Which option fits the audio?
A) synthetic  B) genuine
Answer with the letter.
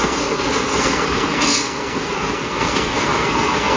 A